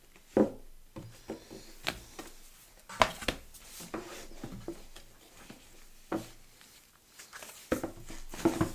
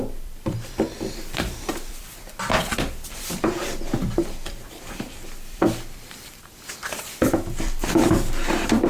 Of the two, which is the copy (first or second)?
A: second